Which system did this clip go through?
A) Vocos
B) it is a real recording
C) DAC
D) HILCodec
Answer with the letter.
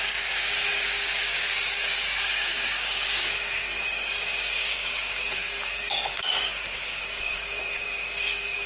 C